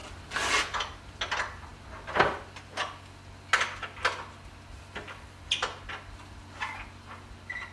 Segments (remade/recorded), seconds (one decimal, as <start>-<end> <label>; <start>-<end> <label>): 0.0-7.7 recorded